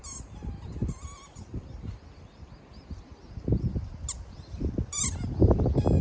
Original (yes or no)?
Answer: yes